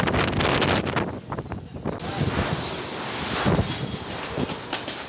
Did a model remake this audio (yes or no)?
no